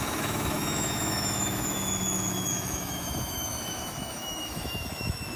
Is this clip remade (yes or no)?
yes